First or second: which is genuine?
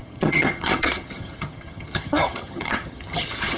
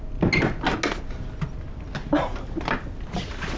second